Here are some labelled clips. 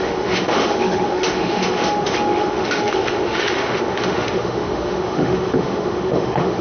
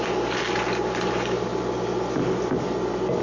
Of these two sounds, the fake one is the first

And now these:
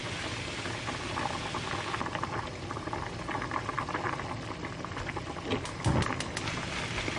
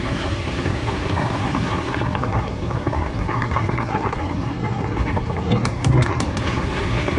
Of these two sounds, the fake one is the second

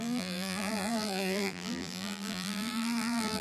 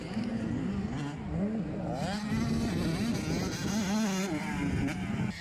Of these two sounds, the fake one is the first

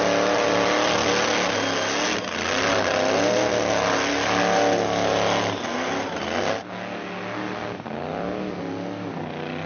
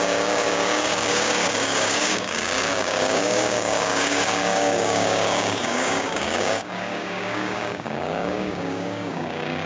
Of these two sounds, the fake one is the second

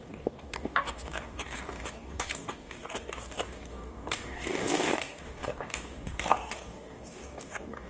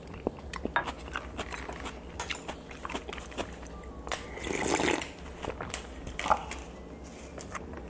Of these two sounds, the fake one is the first